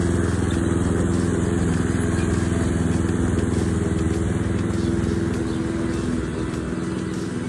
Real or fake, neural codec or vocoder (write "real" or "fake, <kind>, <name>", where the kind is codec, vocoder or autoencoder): real